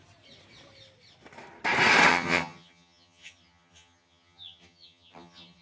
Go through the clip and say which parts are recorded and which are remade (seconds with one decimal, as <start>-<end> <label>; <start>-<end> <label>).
0.0-2.1 recorded; 2.1-5.6 remade